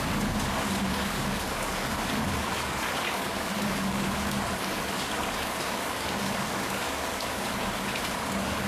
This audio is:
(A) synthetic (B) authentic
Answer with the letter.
A